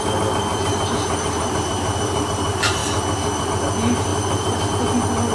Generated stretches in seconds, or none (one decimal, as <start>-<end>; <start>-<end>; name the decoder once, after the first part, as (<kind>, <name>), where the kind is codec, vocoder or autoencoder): 0.5-2.2 (vocoder, BigVGAN v2); 4.1-4.7